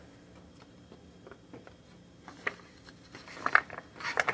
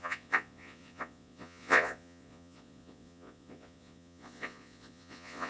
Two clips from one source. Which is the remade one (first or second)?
second